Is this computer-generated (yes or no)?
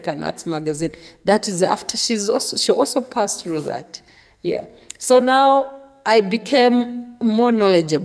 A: yes